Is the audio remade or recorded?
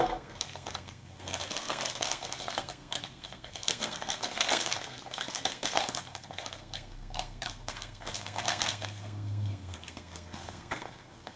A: remade